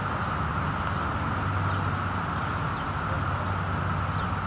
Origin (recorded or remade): recorded